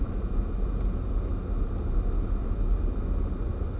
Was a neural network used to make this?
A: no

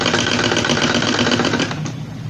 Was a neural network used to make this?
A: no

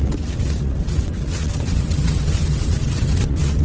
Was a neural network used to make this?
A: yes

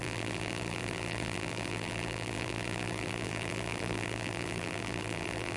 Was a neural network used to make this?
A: yes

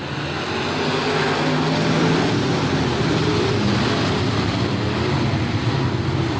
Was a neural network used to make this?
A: no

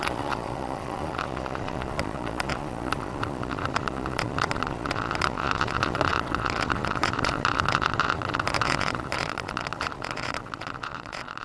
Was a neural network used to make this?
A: yes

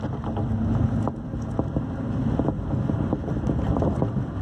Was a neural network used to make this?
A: no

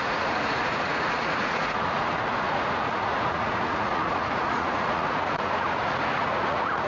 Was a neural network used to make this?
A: yes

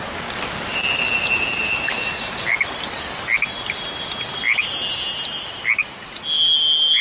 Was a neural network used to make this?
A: no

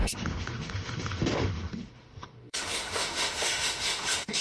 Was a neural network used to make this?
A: yes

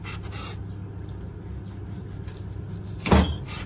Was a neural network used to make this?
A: no